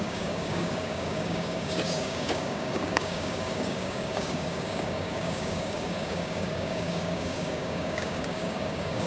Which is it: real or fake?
fake